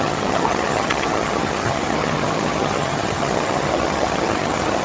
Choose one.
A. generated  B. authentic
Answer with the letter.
A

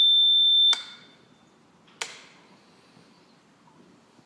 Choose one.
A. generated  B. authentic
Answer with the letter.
B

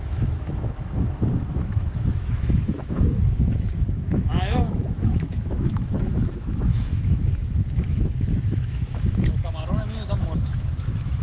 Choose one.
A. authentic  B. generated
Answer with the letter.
B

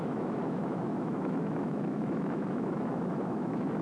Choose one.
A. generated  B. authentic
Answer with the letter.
A